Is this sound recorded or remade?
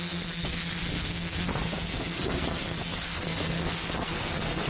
remade